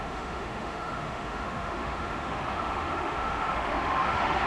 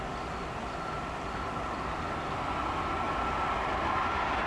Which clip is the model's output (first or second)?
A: first